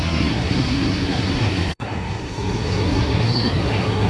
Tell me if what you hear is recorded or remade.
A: remade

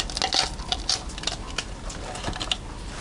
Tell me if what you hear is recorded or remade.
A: recorded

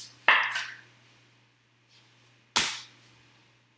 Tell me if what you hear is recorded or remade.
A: recorded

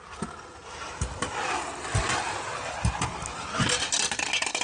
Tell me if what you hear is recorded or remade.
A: recorded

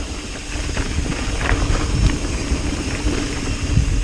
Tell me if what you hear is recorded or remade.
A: recorded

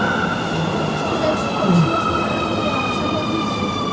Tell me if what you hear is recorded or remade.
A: recorded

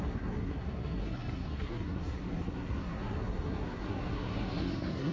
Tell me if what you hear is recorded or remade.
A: remade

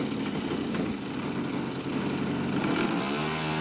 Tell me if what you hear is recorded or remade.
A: recorded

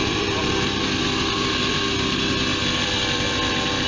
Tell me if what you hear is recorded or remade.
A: recorded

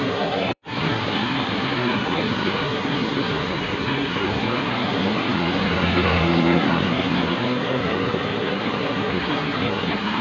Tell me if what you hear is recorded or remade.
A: remade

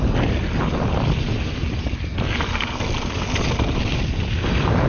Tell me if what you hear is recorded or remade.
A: recorded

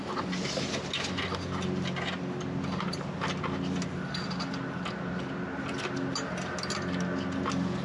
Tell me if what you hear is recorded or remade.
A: recorded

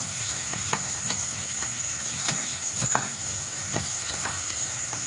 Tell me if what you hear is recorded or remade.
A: remade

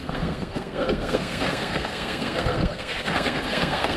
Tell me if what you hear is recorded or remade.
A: remade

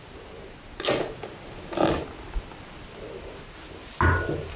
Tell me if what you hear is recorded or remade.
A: recorded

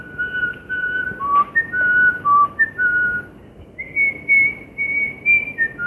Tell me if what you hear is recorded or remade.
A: recorded